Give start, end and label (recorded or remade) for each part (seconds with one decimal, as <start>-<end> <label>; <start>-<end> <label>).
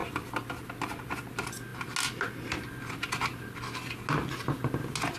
0.0-0.5 remade; 0.5-5.2 recorded